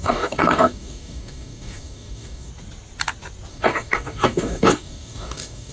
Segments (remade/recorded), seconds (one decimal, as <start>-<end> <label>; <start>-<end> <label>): 0.0-2.5 remade; 2.5-3.5 recorded; 3.5-5.7 remade